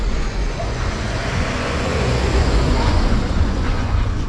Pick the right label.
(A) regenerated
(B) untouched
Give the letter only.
A